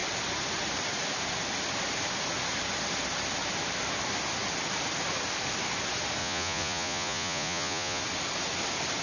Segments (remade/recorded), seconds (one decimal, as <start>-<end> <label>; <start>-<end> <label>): 0.0-6.2 recorded; 6.2-8.0 remade; 8.0-9.0 recorded